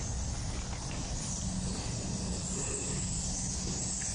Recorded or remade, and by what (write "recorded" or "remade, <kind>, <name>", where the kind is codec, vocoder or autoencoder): recorded